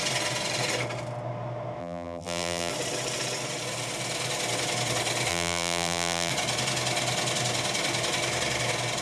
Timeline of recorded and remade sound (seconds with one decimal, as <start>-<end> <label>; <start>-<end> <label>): 0.0-1.8 recorded; 1.8-2.7 remade; 2.7-5.3 recorded; 5.3-6.3 remade; 6.3-9.0 recorded